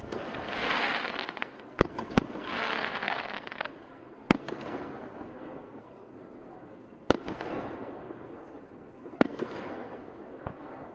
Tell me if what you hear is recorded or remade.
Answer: remade